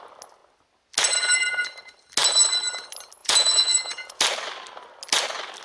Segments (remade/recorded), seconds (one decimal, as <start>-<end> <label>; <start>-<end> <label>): 0.0-3.2 recorded; 3.2-4.2 remade; 4.2-5.6 recorded